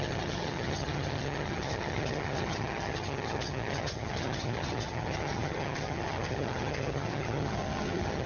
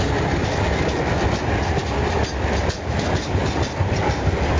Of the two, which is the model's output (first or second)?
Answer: first